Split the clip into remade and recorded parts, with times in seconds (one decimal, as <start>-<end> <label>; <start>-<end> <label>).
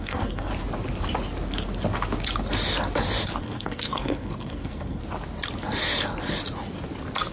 0.0-0.5 remade; 0.5-3.4 recorded; 3.4-5.0 remade; 5.0-7.3 recorded